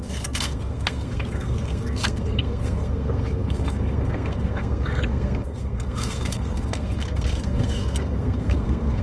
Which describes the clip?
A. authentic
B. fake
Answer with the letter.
B